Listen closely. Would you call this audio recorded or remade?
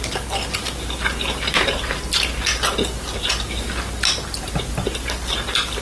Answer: recorded